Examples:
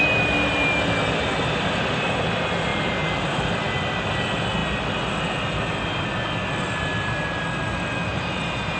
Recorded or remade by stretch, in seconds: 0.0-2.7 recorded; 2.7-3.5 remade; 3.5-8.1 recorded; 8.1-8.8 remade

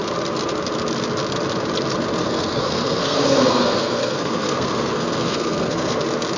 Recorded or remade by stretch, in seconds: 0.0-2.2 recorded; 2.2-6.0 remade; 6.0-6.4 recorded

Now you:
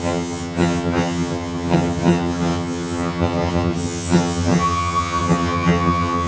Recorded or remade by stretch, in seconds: 0.0-6.3 remade